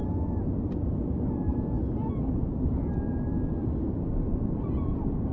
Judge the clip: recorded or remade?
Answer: recorded